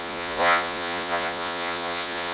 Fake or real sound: fake